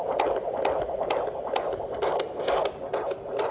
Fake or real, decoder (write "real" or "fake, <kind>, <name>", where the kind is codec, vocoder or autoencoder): real